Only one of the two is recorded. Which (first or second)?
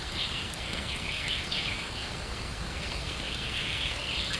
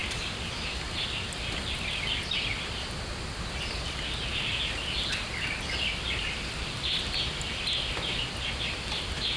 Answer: second